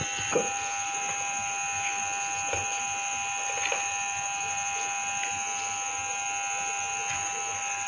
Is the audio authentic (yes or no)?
yes